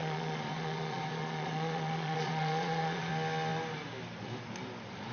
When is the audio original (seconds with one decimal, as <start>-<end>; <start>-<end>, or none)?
3.1-5.1